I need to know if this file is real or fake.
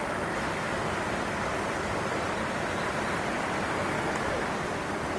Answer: real